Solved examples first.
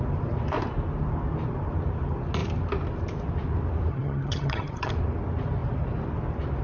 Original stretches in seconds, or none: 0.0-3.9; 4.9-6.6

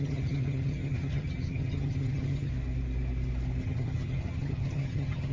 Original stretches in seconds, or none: 2.5-3.6

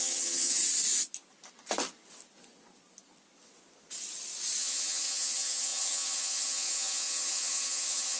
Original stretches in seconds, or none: 0.6-4.6

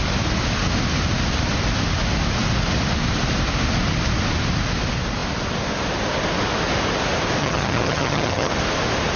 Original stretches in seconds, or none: 0.0-7.4; 8.5-9.2

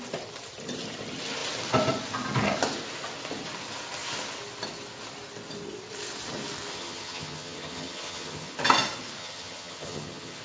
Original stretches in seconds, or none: 0.0-6.7; 8.6-9.2